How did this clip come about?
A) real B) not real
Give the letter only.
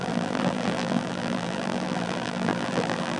B